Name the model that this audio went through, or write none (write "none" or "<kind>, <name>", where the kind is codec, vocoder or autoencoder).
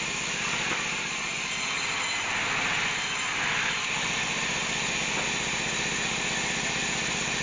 none